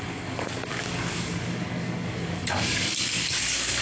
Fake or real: fake